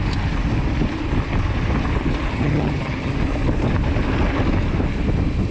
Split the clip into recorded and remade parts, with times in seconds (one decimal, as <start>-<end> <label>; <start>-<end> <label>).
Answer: 0.0-2.3 recorded; 2.3-3.1 remade; 3.1-5.5 recorded